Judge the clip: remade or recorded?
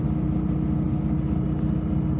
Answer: recorded